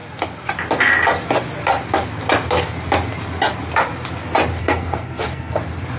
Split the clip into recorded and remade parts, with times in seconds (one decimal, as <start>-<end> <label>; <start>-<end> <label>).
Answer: 0.0-4.6 recorded; 4.6-5.6 remade; 5.6-6.0 recorded